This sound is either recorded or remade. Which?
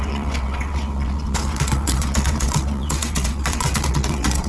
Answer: remade